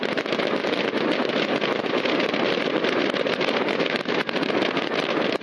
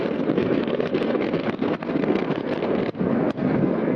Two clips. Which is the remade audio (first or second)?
second